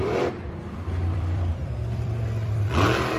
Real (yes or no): no